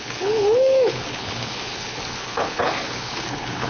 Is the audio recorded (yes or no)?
no